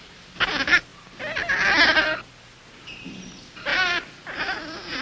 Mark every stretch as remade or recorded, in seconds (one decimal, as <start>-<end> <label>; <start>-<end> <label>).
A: 0.0-3.7 recorded; 3.7-5.0 remade